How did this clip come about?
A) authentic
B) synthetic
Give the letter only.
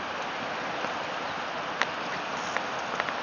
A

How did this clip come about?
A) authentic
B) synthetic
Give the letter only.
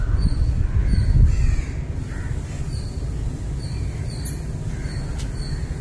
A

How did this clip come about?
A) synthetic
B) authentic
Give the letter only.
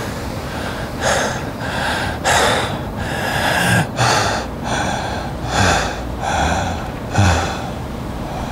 A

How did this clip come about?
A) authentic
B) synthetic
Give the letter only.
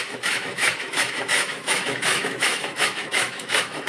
B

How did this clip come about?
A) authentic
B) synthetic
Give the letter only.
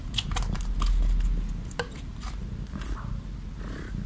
A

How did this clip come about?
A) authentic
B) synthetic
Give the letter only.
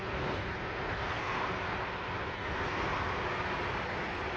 A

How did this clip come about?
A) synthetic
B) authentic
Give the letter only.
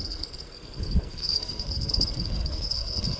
A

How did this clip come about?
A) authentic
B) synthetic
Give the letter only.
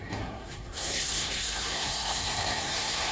B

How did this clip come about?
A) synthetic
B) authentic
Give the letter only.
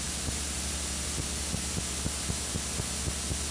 B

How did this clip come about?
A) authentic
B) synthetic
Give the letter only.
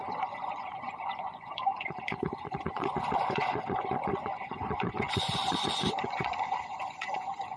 B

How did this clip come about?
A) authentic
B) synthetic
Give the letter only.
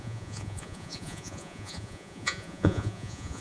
B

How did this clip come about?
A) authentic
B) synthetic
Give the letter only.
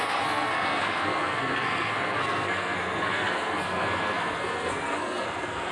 B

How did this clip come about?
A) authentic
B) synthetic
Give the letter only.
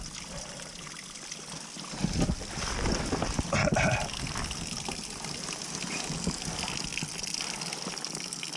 A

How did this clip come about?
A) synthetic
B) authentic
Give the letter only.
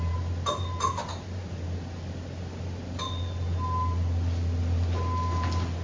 B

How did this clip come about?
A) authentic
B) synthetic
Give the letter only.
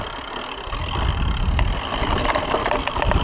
A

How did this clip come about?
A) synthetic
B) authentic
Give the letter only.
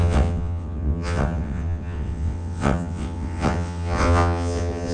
A